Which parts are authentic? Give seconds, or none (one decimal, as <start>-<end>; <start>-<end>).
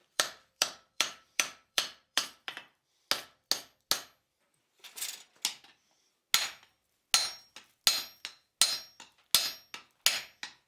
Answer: 3.1-10.7